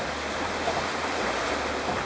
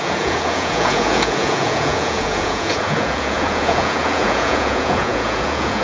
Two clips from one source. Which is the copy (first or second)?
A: second